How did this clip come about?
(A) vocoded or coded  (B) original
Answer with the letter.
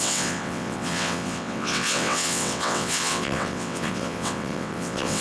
A